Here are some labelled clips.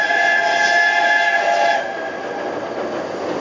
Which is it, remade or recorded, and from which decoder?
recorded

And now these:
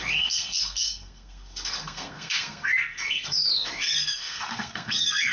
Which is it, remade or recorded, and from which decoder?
remade, codec, SNAC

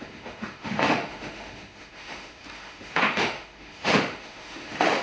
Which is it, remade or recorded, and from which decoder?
remade, autoencoder, DAC-VAE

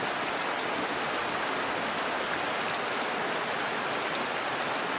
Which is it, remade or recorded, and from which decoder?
recorded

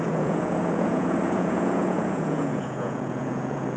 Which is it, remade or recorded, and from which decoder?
remade, vocoder, Vocos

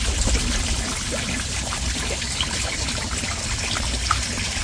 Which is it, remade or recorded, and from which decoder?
recorded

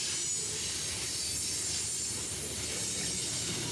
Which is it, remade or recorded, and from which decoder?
recorded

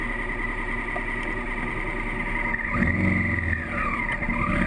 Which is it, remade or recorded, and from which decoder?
recorded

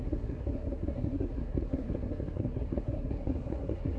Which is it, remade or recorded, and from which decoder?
remade, codec, SNAC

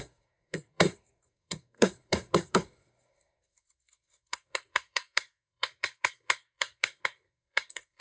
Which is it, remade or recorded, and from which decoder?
remade, codec, SNAC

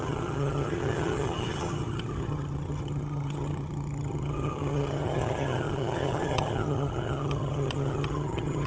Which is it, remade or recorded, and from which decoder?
remade, vocoder, HiFi-GAN